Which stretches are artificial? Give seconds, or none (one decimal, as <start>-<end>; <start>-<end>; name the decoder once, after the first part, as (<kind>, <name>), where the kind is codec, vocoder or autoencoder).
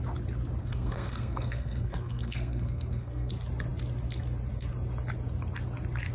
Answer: 0.6-3.3 (codec, SNAC)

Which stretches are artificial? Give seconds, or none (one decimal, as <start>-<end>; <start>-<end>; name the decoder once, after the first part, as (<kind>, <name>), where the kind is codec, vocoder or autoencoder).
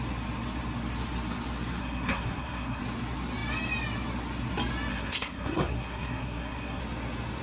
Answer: 1.8-2.8 (codec, SNAC); 4.9-6.8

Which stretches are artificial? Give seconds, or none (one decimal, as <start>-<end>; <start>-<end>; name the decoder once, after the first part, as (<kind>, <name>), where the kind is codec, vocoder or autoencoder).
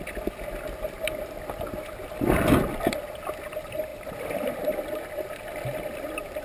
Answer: none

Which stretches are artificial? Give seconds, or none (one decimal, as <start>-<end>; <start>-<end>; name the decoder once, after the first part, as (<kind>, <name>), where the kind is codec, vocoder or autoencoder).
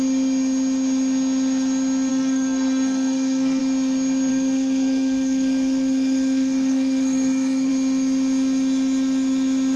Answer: 2.1-3.6 (codec, SNAC); 4.3-7.7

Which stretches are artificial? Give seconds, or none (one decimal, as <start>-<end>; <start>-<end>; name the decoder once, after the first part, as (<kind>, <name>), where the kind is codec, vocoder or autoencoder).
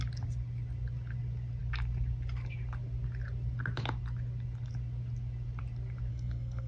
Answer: 6.1-6.7 (codec, SNAC)